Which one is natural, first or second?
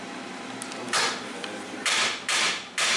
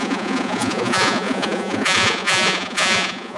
first